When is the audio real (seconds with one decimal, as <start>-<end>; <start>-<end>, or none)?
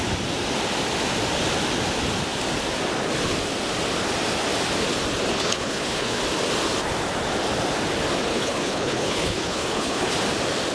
0.0-5.3; 6.2-8.3; 10.1-10.7